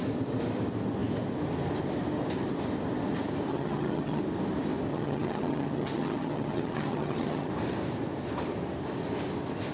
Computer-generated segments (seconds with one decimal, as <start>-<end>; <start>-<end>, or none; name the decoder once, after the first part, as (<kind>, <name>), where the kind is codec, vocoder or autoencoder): 3.5-4.2 (vocoder, HiFi-GAN); 4.9-7.5